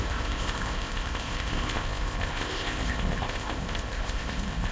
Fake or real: fake